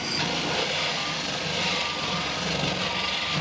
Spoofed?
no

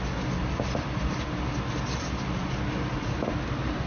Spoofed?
no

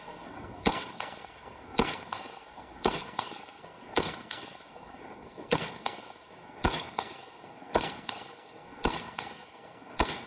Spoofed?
yes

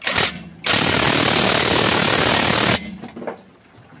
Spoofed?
no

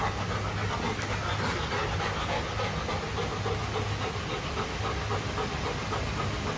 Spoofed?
no